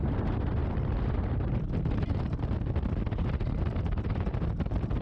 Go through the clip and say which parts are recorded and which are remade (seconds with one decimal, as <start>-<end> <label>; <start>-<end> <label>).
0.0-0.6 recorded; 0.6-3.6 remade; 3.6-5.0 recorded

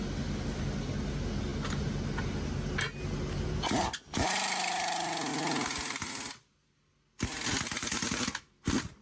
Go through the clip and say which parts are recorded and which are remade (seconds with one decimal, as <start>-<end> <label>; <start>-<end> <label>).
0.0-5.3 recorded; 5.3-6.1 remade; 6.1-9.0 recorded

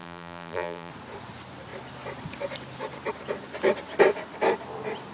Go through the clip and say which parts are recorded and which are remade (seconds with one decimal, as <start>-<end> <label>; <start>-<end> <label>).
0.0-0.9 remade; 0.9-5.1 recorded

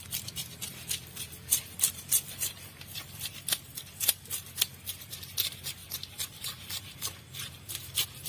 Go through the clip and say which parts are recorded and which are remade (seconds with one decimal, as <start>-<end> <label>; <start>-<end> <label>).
0.0-0.6 recorded; 0.6-3.7 remade; 3.7-5.8 recorded; 5.8-7.5 remade; 7.5-8.3 recorded

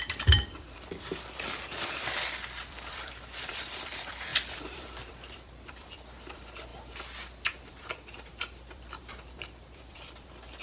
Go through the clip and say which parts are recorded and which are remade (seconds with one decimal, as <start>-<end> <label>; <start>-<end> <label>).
0.0-6.7 remade; 6.7-7.7 recorded; 7.7-10.6 remade

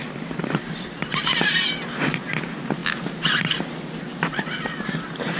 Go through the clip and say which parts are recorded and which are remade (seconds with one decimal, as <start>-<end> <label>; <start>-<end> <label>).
0.0-5.4 recorded